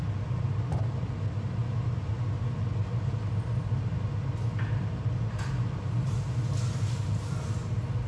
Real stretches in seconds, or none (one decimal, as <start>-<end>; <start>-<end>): 0.0-8.1

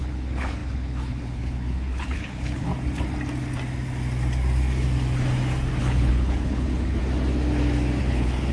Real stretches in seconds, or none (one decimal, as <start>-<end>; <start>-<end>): 2.7-5.8; 7.0-8.0

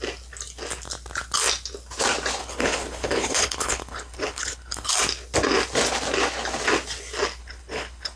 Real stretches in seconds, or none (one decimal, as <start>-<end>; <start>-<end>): 0.0-2.4; 4.9-7.4

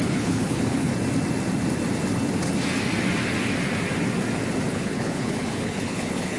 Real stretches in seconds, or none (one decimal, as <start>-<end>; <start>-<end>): 0.9-4.7

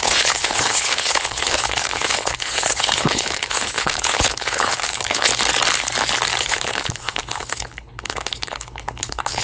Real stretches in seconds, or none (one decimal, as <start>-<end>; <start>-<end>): 5.3-6.4

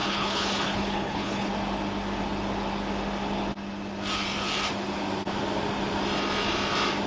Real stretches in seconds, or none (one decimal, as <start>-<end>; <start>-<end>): 1.5-7.1

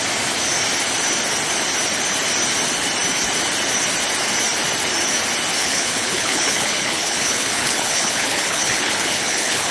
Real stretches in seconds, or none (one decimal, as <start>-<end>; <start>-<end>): 0.0-5.6